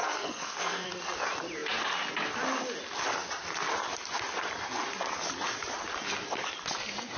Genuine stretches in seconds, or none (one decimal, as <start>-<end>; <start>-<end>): 0.9-7.2